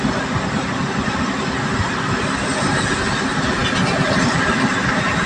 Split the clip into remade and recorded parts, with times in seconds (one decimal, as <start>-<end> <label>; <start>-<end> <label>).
0.0-5.3 recorded